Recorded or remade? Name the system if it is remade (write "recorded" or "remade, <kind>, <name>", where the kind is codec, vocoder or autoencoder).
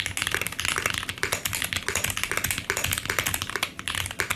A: recorded